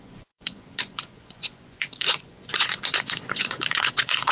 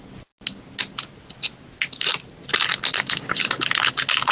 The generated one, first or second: first